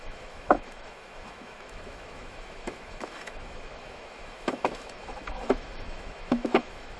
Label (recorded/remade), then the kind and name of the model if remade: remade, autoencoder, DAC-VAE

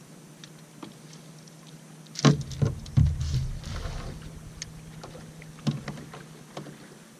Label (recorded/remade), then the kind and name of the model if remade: recorded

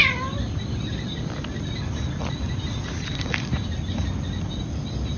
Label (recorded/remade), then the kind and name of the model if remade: recorded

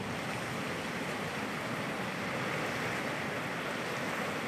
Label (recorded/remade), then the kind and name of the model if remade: recorded